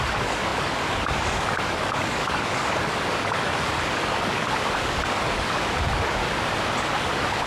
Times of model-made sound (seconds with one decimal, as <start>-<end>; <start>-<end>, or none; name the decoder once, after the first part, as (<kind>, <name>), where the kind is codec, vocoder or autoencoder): 0.0-6.2 (codec, DAC); 6.9-7.5